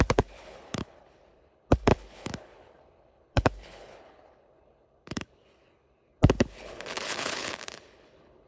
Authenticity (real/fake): fake